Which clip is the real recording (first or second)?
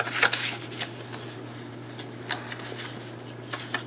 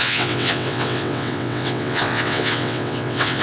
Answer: first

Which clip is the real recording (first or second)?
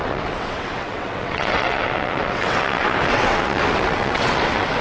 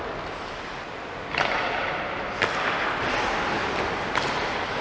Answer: second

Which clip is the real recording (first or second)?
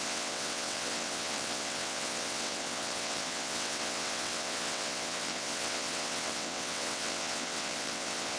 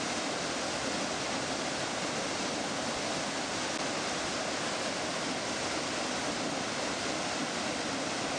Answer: second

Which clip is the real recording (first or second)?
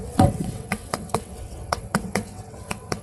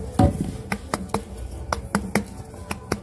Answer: second